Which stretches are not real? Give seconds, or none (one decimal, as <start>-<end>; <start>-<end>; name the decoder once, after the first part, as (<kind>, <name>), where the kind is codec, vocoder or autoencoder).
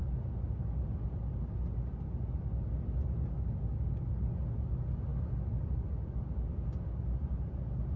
none